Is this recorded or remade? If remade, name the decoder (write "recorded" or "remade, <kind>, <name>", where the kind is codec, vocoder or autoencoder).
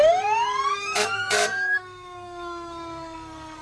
remade, codec, SNAC